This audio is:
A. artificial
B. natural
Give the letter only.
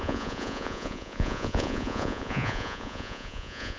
A